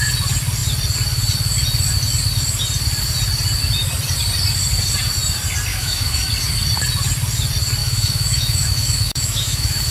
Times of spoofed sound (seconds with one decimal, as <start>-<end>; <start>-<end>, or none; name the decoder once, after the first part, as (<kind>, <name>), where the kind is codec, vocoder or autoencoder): 5.7-6.3 (autoencoder, DAC-VAE); 7.8-9.9